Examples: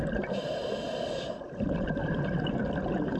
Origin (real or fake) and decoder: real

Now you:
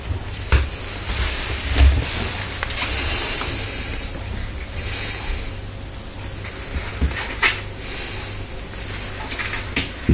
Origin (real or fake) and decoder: real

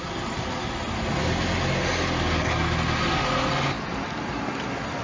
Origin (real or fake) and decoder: real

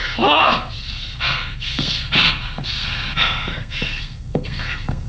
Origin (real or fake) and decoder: fake, codec, SNAC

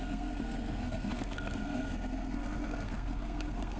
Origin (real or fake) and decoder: fake, codec, SNAC